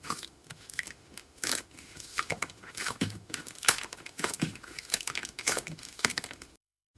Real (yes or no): no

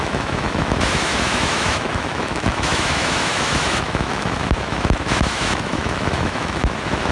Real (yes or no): no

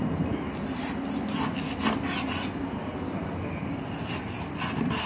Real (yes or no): yes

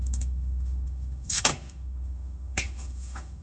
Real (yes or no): no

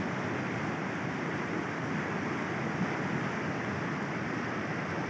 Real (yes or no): yes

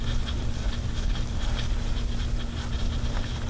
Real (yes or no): yes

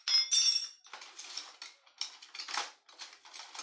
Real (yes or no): yes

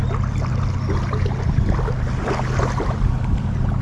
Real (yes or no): yes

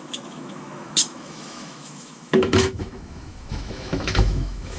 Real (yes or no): no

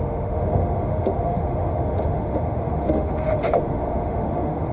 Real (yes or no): no